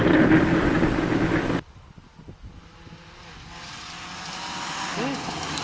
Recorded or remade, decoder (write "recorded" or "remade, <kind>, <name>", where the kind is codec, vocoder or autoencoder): recorded